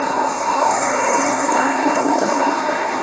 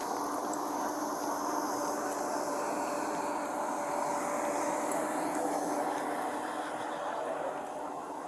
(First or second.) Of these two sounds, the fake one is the first